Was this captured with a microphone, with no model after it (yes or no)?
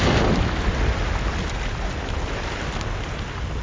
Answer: yes